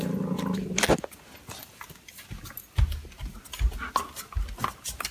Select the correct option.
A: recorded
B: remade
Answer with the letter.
A